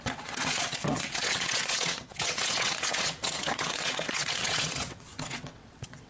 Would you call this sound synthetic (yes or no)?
yes